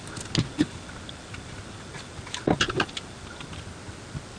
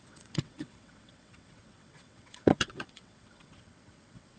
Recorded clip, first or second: first